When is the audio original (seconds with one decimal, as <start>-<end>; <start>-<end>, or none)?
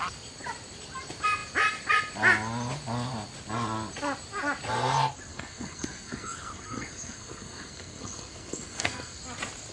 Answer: 0.0-5.3; 9.2-9.7